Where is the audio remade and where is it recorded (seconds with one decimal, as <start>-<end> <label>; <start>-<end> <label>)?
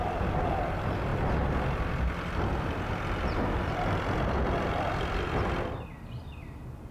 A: 0.0-6.9 recorded